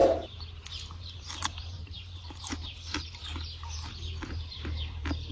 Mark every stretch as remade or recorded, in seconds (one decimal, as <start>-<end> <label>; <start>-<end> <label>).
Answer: 0.0-3.3 remade; 3.3-3.9 recorded; 3.9-5.3 remade